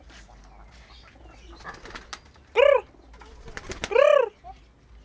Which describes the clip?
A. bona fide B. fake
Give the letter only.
A